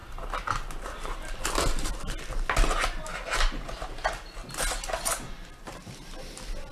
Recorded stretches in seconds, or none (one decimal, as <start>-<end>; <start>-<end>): 1.9-6.7